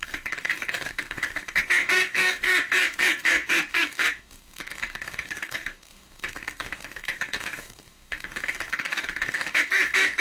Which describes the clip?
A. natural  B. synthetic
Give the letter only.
B